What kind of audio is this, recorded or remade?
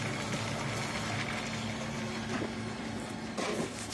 recorded